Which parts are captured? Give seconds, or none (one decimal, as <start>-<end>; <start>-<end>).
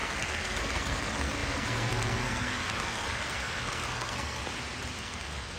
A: 4.4-5.0